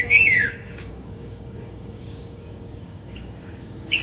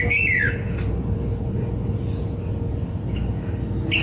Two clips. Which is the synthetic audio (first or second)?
first